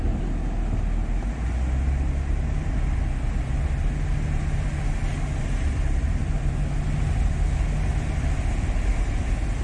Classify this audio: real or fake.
real